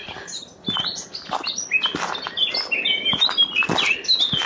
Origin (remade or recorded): recorded